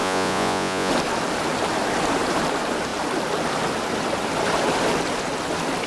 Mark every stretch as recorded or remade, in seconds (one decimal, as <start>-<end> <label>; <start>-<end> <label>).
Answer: 0.0-0.9 remade; 0.9-5.9 recorded